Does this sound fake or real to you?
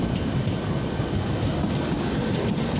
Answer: real